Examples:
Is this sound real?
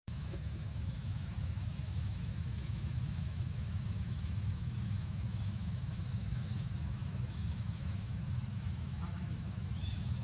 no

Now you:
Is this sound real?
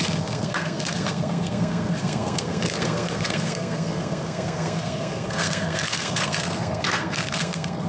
no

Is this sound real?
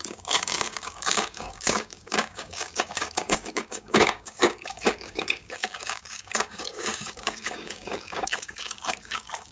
no